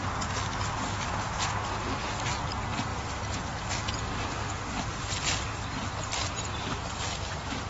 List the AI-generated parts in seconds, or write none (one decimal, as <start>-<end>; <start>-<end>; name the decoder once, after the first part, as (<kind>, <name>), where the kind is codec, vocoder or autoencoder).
5.7-7.7 (vocoder, BigVGAN v2)